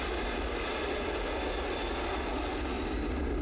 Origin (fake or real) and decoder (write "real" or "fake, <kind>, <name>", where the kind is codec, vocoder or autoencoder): real